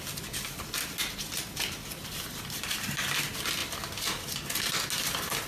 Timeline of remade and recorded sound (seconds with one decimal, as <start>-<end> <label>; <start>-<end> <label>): 0.0-3.6 remade; 3.6-5.5 recorded